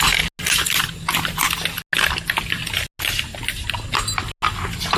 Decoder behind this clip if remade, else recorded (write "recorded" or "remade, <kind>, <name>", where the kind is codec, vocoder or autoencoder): recorded